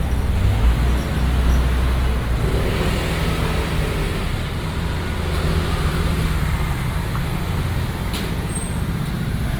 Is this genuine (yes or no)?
yes